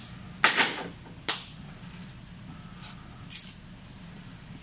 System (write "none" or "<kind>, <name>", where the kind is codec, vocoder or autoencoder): none